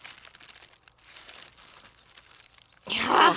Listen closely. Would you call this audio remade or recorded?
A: remade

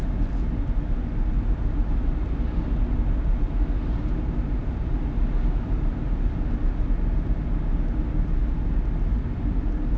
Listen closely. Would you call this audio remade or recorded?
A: recorded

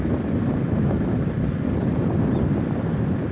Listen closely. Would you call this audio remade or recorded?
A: recorded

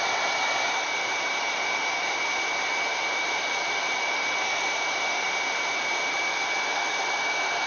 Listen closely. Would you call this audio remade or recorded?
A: remade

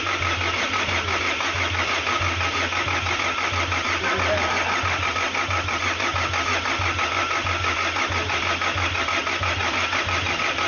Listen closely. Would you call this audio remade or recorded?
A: recorded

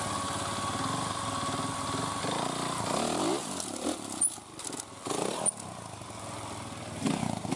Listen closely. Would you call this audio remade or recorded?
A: recorded